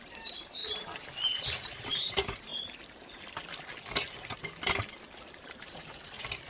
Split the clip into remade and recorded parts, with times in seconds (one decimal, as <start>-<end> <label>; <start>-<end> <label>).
0.0-2.5 remade; 2.5-5.4 recorded; 5.4-6.5 remade